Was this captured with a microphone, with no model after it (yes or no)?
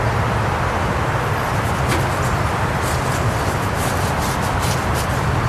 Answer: yes